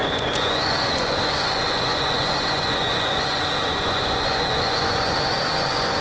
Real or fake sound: fake